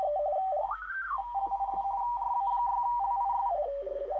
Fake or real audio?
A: real